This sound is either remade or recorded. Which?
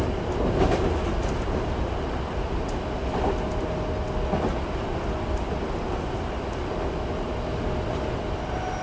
recorded